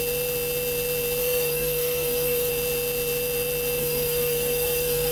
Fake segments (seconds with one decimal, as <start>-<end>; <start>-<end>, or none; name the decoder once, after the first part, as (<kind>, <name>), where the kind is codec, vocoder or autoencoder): 1.2-2.5 (codec, SNAC); 3.8-5.1